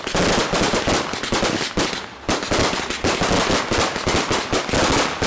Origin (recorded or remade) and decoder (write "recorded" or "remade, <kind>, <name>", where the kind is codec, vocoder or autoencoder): recorded